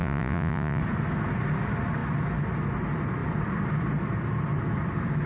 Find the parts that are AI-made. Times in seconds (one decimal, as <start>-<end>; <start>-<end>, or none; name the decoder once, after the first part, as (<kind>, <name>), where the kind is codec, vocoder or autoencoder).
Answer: 0.0-0.8 (vocoder, Vocos)